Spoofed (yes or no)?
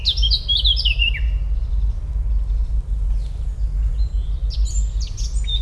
no